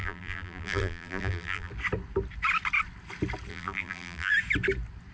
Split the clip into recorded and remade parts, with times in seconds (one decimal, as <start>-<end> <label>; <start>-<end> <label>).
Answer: 0.0-1.7 remade; 1.7-3.5 recorded; 3.5-4.3 remade; 4.3-5.1 recorded